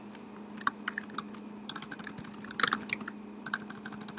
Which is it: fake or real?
real